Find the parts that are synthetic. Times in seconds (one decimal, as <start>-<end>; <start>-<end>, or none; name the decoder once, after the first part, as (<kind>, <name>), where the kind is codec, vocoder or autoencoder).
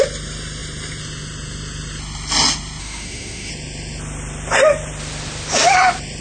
2.8-3.5 (autoencoder, DAC-VAE)